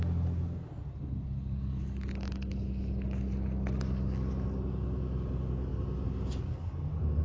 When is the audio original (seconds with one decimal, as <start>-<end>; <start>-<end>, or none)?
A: 0.0-7.2